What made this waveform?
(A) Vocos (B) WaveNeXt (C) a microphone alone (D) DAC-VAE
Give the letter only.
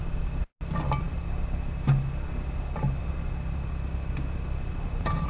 C